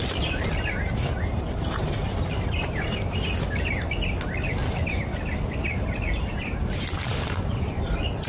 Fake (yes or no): yes